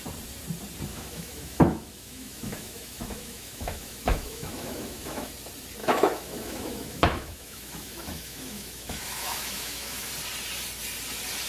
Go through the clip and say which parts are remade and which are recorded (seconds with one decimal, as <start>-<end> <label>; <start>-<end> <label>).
0.0-0.9 recorded; 0.9-5.3 remade; 5.3-5.8 recorded; 5.8-10.1 remade; 10.1-11.5 recorded